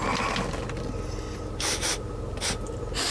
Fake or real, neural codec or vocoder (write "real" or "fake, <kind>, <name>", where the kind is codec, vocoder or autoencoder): real